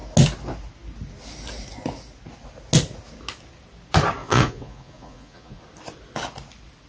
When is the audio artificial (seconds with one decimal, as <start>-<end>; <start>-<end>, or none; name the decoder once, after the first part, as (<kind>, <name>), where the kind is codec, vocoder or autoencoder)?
4.2-5.6 (vocoder, Vocos)